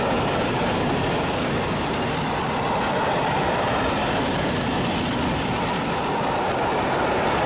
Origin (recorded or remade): recorded